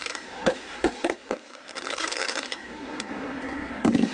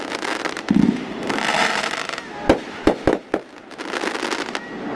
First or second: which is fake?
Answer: first